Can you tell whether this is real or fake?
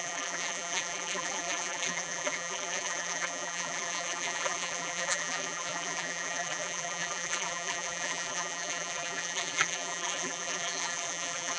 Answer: fake